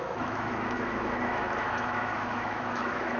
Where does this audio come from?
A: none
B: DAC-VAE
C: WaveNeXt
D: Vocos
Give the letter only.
B